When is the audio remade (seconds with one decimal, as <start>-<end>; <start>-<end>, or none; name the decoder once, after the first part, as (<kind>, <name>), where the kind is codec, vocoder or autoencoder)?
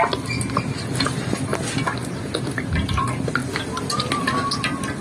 none